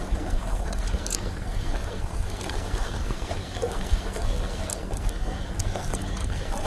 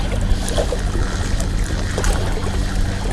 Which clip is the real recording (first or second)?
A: second